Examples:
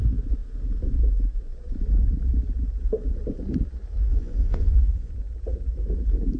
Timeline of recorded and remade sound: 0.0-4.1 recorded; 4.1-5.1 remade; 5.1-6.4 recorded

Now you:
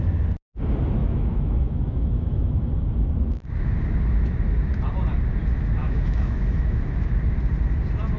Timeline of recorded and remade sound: 0.0-1.0 recorded; 1.0-2.7 remade; 2.7-5.8 recorded; 5.8-7.1 remade; 7.1-8.2 recorded

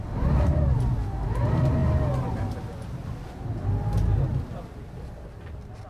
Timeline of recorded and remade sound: 0.0-5.9 recorded

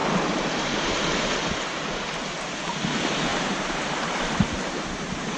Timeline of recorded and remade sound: 0.0-1.0 remade; 1.0-3.3 recorded; 3.3-3.8 remade; 3.8-5.4 recorded

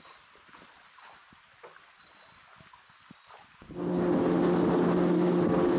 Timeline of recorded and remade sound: 0.0-5.8 recorded

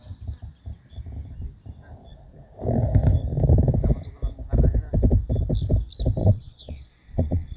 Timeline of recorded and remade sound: 0.0-6.2 recorded; 6.2-7.6 remade